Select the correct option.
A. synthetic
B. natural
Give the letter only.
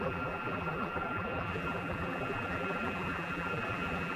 A